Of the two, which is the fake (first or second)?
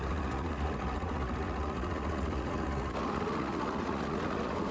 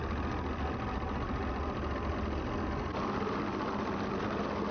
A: first